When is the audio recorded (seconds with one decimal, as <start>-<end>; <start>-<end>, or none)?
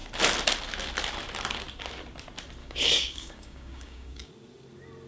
0.0-2.6; 4.3-5.1